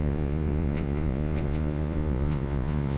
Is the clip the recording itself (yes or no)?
no